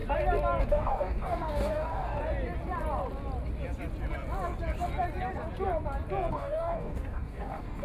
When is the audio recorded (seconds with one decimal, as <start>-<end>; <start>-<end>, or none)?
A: 0.0-0.6; 2.2-6.3